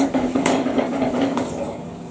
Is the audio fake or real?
fake